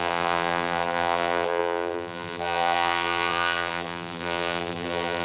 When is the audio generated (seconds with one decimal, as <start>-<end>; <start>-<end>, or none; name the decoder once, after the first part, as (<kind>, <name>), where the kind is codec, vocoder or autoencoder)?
0.0-5.2 (vocoder, BigVGAN v2)